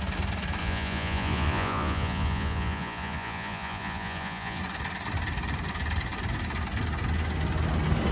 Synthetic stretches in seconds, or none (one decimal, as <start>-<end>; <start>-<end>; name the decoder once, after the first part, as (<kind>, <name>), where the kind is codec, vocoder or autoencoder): 0.6-4.6 (vocoder, Vocos)